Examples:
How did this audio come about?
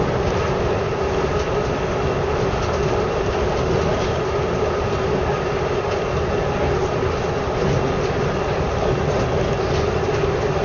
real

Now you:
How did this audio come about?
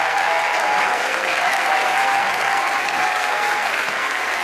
fake